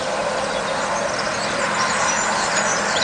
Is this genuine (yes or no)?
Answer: yes